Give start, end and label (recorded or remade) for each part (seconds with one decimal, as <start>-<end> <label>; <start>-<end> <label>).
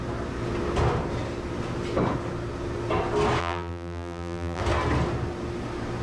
0.0-3.4 recorded; 3.4-4.6 remade; 4.6-6.0 recorded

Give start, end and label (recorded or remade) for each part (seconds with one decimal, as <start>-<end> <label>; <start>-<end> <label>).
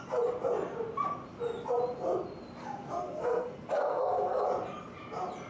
0.0-2.6 recorded; 2.6-4.4 remade; 4.4-5.5 recorded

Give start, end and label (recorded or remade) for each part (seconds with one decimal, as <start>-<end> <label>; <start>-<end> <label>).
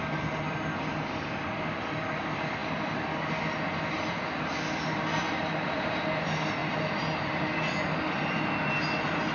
0.0-9.3 recorded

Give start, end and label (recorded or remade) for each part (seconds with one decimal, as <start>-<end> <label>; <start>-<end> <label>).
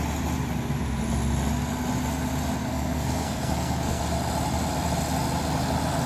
0.0-2.7 recorded; 2.7-4.0 remade; 4.0-6.1 recorded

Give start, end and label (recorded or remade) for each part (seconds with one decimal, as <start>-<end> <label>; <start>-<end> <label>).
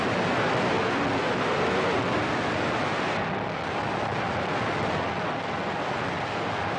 0.0-6.8 recorded